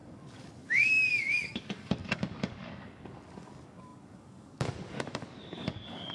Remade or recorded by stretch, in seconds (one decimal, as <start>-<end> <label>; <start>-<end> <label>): 0.0-6.1 remade